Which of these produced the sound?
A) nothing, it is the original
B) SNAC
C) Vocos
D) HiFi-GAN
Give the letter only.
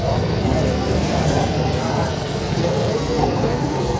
B